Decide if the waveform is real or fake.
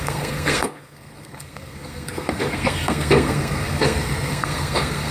fake